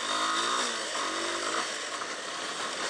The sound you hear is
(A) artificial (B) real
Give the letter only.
B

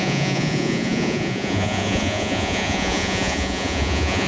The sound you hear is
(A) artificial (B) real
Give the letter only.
A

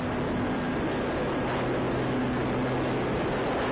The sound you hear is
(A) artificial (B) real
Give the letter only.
B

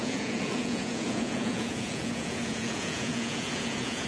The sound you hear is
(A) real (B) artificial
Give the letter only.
B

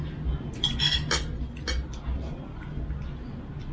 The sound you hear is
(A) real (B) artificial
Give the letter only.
A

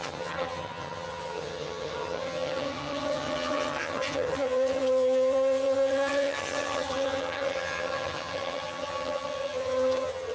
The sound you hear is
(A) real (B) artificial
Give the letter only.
B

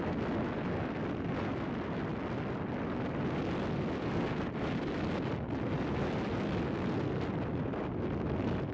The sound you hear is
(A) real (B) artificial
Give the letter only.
A